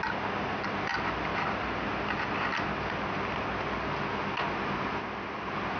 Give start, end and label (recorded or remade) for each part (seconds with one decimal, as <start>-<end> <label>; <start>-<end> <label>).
0.0-5.8 recorded